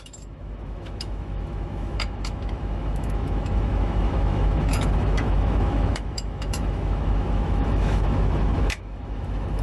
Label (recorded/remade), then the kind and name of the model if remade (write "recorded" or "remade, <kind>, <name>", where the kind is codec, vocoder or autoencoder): remade, autoencoder, DAC-VAE